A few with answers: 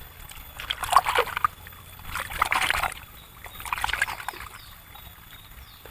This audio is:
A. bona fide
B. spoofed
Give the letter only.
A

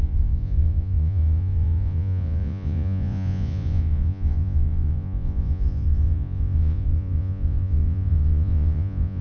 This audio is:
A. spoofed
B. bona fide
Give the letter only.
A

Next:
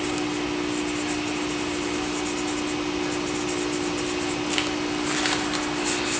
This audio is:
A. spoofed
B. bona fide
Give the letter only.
B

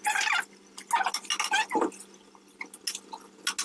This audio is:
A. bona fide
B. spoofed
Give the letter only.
A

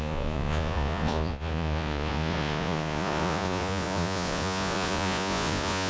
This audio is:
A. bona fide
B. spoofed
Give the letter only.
B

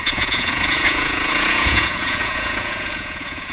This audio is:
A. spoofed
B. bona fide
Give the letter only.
A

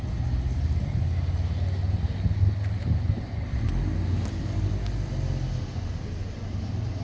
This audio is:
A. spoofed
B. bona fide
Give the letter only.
B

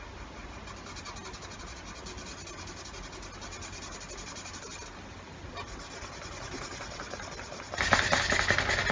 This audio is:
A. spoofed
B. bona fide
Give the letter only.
B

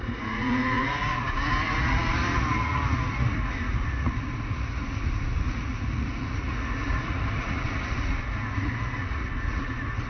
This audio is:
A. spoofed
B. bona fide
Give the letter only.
A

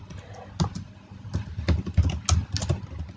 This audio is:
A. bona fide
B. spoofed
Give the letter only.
A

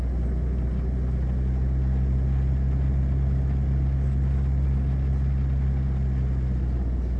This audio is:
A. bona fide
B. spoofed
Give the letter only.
A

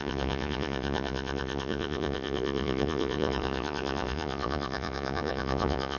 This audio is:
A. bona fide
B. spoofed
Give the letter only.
B